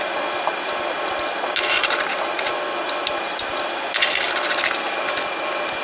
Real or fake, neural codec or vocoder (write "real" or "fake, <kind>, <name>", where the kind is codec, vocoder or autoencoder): real